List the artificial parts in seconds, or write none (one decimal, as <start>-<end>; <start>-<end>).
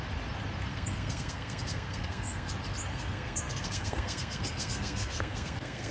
0.7-2.5; 2.9-5.9